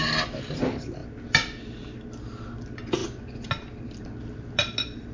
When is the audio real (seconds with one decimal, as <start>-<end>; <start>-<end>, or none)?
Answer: 0.0-3.0; 3.5-5.1